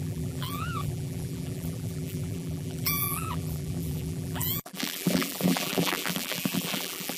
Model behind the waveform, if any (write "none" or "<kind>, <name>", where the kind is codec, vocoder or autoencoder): vocoder, BigVGAN v2